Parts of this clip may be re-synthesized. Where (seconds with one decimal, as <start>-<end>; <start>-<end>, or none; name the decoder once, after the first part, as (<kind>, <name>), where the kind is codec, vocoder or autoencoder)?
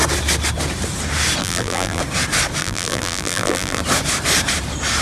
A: 1.4-2.0 (vocoder, BigVGAN v2); 2.6-3.8